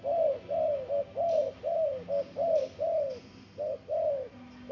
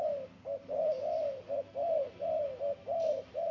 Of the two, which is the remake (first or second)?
second